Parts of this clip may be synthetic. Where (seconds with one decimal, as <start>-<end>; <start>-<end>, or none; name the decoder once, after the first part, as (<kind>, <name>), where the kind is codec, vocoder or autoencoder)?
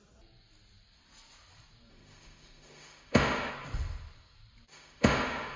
1.9-3.5 (autoencoder, DAC-VAE); 4.7-5.6